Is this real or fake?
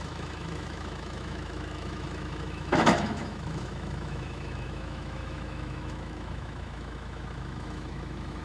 fake